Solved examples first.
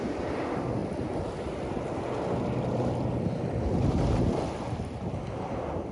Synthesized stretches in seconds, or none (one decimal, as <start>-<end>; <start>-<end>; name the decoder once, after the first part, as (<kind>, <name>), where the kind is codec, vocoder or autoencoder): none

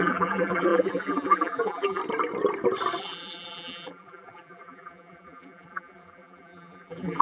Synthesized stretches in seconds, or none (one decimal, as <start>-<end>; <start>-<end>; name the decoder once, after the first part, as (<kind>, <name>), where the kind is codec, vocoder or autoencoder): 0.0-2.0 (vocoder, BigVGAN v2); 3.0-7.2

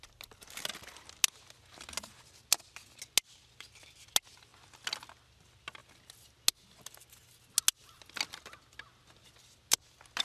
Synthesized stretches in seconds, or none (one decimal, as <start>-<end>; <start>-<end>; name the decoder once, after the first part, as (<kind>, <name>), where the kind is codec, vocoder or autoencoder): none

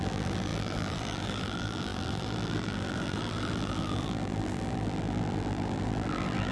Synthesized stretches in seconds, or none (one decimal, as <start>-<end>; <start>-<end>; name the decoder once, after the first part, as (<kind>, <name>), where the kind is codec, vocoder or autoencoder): 0.0-6.5 (vocoder, BigVGAN v2)

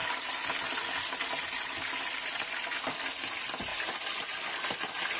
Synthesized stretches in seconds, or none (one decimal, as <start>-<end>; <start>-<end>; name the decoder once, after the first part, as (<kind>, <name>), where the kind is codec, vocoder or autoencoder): 3.7-4.6 (vocoder, BigVGAN v2)

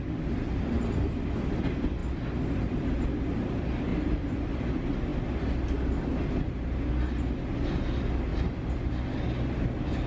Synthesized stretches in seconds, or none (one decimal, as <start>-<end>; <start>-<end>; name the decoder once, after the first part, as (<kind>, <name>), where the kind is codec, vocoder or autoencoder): 3.9-4.6 (vocoder, BigVGAN v2); 8.3-8.9

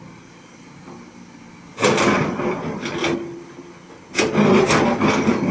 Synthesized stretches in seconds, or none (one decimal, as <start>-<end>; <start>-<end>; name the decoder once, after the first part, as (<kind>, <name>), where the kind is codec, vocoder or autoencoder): none